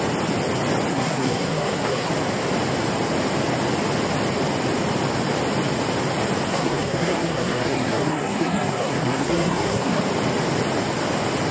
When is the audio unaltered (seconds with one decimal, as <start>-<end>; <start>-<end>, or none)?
0.0-0.9; 2.1-6.5; 10.0-11.5